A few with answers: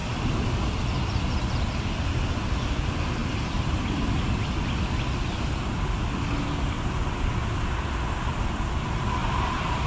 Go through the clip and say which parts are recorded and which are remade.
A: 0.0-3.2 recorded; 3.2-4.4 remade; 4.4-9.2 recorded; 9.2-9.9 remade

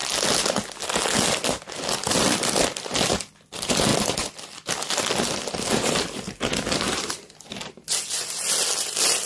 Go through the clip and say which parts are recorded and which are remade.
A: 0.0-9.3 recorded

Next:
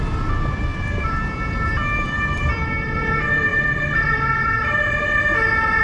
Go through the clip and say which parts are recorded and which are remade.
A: 0.0-0.7 recorded; 0.7-2.7 remade; 2.7-3.5 recorded; 3.5-4.5 remade; 4.5-5.8 recorded

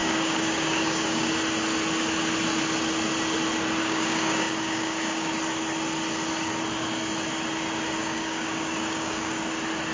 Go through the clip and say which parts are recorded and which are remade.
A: 0.0-1.3 remade; 1.3-3.8 recorded; 3.8-5.3 remade; 5.3-8.0 recorded; 8.0-9.4 remade; 9.4-9.9 recorded